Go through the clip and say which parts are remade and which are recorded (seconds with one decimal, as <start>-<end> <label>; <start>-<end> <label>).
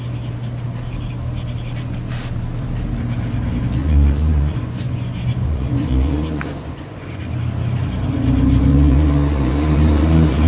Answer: 0.0-3.8 recorded; 3.8-7.2 remade; 7.2-8.7 recorded; 8.7-10.5 remade